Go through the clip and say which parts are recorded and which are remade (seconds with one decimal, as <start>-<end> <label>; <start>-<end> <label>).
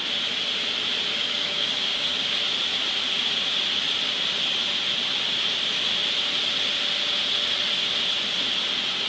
0.0-1.1 recorded; 1.1-2.4 remade; 2.4-9.1 recorded